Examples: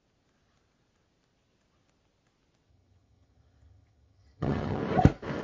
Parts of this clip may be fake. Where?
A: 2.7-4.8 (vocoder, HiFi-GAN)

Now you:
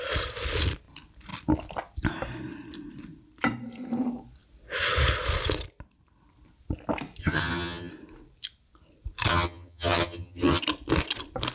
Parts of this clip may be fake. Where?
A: 7.2-7.9 (vocoder, HiFi-GAN); 9.3-10.6

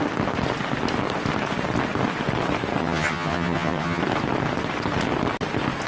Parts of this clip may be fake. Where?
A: 2.8-4.0 (vocoder, HiFi-GAN)

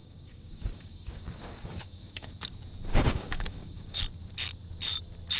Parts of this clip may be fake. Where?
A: 0.0-2.3 (codec, DAC); 2.9-4.0

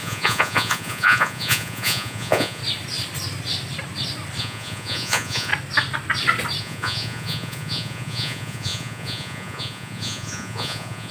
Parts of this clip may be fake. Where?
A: 0.0-2.6 (vocoder, Vocos); 4.4-5.5; 6.6-11.1

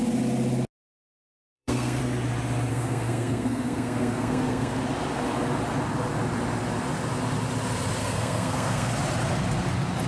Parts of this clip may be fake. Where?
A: 1.5-2.0 (codec, SNAC); 2.7-4.8; 8.0-8.9

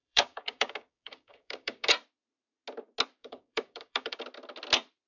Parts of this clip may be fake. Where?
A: 0.0-1.9 (codec, DAC); 3.2-4.2